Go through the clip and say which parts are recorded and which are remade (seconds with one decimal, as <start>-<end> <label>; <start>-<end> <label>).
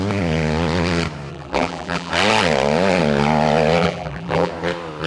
0.0-1.3 recorded; 1.3-2.1 remade; 2.1-3.8 recorded; 3.8-4.5 remade; 4.5-5.1 recorded